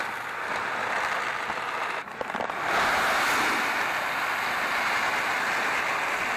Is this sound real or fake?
real